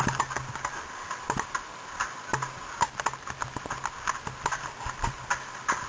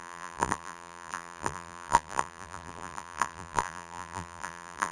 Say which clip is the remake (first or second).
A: second